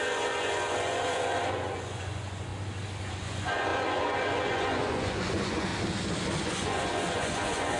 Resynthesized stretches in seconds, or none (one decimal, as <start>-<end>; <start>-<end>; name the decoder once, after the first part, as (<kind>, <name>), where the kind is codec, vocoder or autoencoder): 0.0-2.5 (vocoder, Vocos); 3.1-5.7; 6.4-7.8